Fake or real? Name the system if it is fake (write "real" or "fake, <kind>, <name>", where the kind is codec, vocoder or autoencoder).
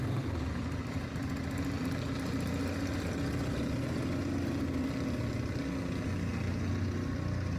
real